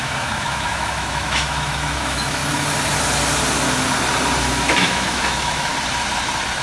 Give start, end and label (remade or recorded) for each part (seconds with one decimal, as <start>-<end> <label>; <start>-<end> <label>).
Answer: 0.0-2.4 remade; 2.4-4.4 recorded; 4.4-5.7 remade; 5.7-6.6 recorded